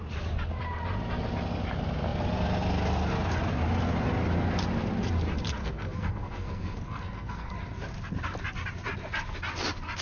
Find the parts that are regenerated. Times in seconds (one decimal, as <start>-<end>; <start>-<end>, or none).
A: 5.6-7.5